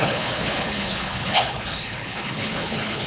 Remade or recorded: remade